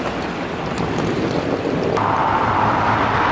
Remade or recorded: recorded